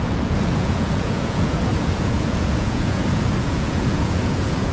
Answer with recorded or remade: remade